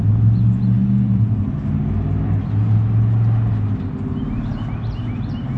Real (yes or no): yes